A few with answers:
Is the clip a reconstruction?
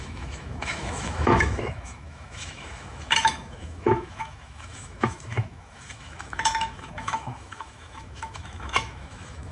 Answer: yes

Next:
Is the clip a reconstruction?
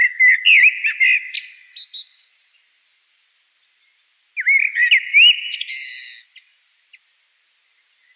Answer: no